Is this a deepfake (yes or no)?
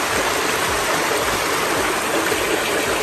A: no